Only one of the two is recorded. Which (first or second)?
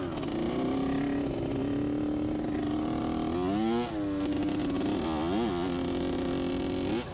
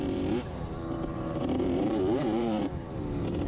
first